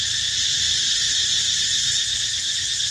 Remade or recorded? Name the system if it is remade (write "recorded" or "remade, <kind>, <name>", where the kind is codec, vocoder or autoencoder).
remade, vocoder, BigVGAN v2